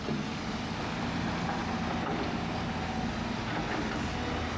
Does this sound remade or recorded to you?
recorded